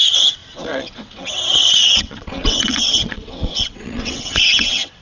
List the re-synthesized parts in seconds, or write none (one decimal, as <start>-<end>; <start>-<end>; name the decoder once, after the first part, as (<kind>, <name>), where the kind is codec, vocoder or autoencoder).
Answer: 0.0-5.0 (vocoder, WaveNeXt)